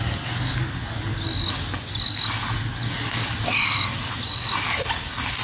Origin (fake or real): real